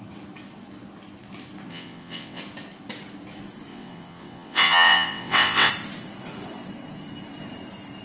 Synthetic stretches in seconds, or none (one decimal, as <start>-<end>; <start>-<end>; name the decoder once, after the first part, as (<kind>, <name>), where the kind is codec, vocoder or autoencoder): 1.7-2.4 (vocoder, WaveNeXt); 3.7-5.7